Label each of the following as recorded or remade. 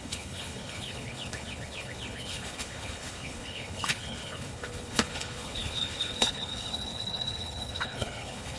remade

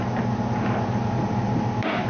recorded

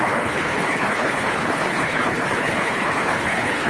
remade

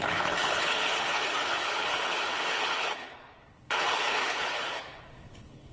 remade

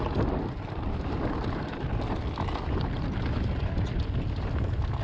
recorded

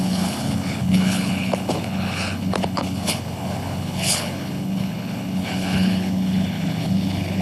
remade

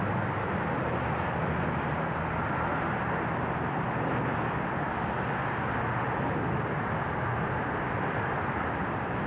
recorded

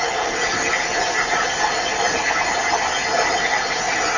recorded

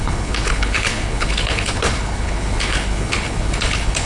remade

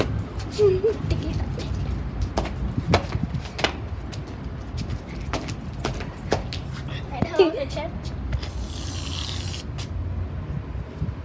recorded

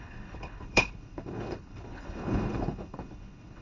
remade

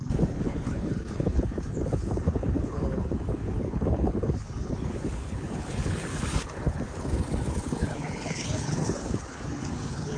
remade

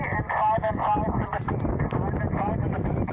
recorded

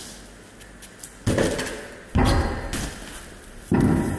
recorded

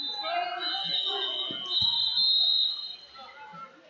recorded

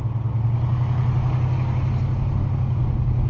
recorded